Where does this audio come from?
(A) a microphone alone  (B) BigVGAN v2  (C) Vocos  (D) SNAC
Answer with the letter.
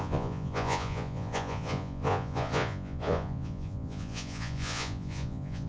C